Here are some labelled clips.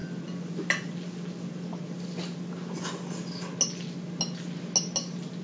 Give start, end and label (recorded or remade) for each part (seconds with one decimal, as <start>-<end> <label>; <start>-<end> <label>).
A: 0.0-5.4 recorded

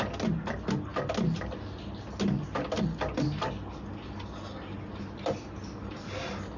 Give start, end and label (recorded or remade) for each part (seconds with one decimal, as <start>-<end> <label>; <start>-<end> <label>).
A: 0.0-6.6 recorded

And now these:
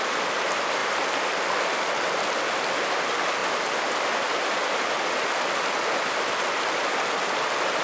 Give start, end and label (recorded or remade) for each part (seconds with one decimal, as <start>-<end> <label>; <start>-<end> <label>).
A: 0.0-7.8 recorded

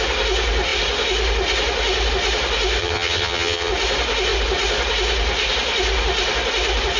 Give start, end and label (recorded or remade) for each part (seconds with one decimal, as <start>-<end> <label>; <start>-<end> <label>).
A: 0.0-2.8 recorded; 2.8-3.7 remade; 3.7-7.0 recorded

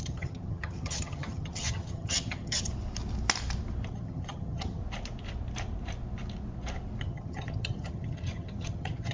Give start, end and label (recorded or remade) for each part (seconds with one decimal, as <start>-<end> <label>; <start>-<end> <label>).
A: 0.0-2.7 remade; 2.7-3.9 recorded; 3.9-4.8 remade; 4.8-7.0 recorded; 7.0-9.1 remade